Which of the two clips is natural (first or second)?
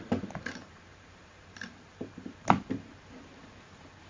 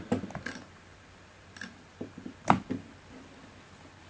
second